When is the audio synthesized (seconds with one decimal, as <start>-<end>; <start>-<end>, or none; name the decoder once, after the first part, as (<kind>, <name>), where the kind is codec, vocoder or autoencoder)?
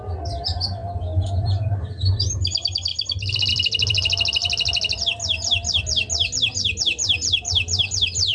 0.0-2.9 (vocoder, BigVGAN v2); 3.5-4.4; 6.8-8.3